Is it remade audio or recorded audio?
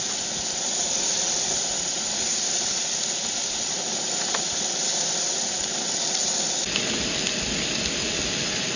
recorded